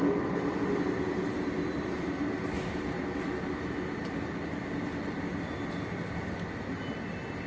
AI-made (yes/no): no